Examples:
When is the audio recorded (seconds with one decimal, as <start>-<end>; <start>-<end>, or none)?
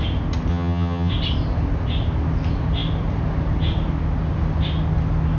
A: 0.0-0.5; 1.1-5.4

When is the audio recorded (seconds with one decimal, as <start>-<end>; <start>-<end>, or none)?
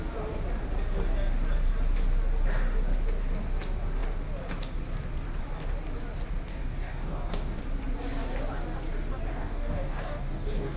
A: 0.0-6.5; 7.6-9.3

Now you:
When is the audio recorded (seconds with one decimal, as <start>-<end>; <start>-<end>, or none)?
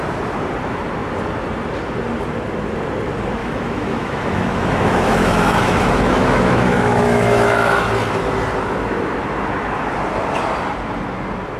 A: 0.0-3.4; 7.9-11.6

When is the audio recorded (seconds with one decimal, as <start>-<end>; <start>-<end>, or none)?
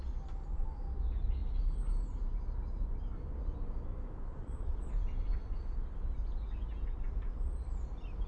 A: 0.0-4.3; 4.9-8.3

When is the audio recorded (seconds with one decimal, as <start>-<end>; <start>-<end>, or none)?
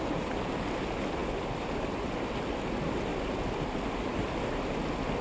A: 0.0-5.2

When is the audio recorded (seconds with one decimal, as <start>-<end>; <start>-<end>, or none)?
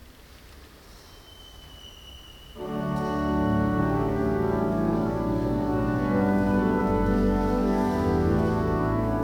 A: 0.0-3.8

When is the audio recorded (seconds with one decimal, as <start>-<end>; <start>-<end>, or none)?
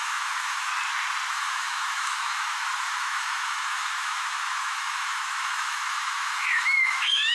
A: 0.7-1.3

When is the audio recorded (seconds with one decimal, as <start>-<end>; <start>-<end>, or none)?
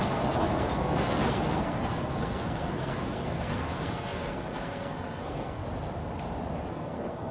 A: 5.6-6.7